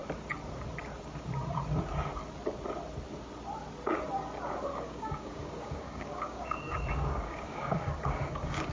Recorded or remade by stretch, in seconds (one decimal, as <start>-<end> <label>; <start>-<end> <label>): 0.0-4.7 recorded; 4.7-8.7 remade